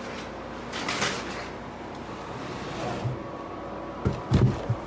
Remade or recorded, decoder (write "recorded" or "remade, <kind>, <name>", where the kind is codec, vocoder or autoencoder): recorded